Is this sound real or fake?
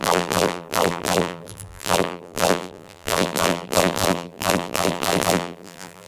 fake